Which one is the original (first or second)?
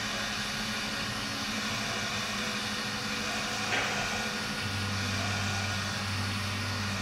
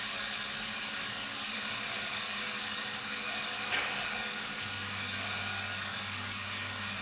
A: first